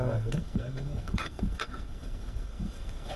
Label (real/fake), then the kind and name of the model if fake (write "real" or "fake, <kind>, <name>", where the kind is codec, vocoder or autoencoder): fake, codec, SNAC